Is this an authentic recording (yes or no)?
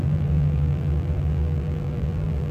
no